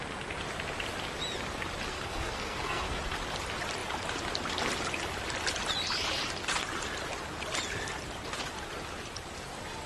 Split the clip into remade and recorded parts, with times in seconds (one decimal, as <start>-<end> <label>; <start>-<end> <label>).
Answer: 0.0-1.9 recorded; 1.9-3.0 remade; 3.0-9.9 recorded